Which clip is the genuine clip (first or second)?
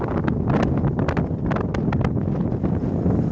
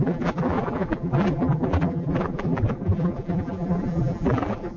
first